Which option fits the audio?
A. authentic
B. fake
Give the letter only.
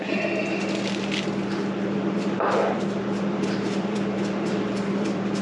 B